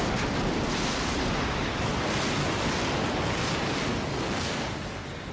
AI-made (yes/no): no